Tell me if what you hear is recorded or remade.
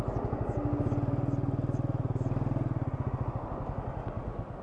recorded